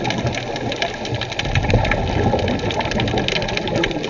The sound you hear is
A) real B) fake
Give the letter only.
A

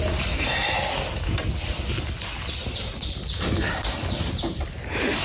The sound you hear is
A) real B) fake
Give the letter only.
A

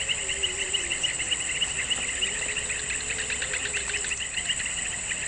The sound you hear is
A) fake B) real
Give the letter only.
B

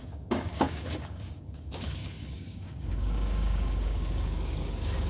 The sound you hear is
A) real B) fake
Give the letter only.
B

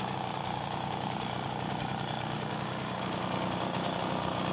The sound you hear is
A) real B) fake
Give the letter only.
B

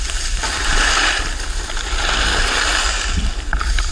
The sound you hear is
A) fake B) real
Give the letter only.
B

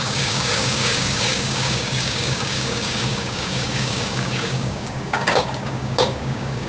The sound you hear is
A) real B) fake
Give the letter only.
B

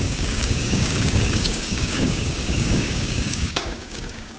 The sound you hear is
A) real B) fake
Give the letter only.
B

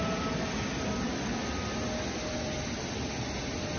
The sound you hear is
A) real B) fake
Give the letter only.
A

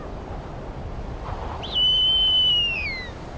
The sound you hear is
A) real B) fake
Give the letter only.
A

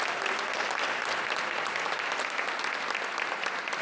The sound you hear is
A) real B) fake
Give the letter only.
A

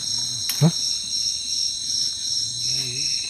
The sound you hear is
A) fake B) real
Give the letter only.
B